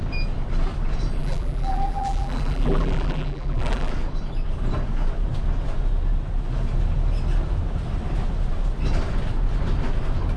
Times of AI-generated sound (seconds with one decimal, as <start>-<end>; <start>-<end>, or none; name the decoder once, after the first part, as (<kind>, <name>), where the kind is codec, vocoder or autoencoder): 1.2-3.9 (vocoder, BigVGAN v2)